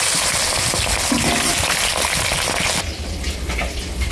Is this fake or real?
real